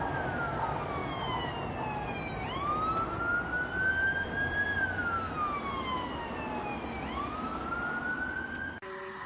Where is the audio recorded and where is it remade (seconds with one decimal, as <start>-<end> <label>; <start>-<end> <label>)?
0.0-1.0 recorded; 1.0-1.5 remade; 1.5-9.3 recorded